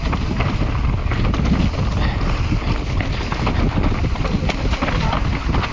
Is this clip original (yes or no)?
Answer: yes